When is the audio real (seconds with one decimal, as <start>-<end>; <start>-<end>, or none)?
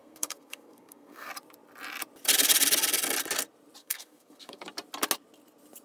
1.3-3.8; 4.6-5.8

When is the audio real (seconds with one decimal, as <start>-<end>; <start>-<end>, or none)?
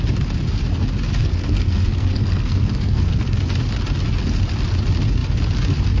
0.0-1.2; 3.4-6.0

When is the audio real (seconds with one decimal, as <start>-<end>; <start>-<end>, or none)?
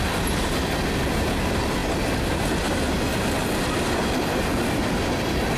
0.0-5.6